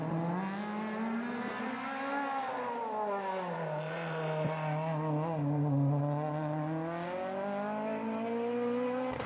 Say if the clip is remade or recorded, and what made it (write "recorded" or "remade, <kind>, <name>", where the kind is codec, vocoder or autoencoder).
recorded